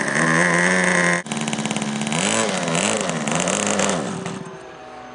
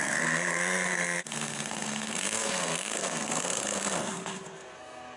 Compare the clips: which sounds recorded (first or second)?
first